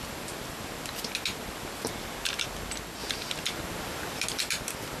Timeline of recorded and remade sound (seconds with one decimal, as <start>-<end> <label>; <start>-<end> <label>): 0.0-5.0 recorded